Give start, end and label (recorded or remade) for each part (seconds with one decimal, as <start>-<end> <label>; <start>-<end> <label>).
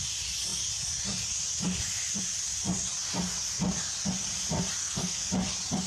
0.0-4.8 recorded; 4.8-5.3 remade; 5.3-5.9 recorded